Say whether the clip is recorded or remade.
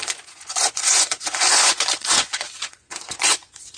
remade